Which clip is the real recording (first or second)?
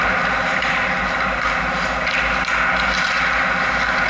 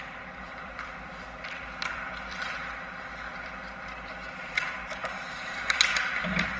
first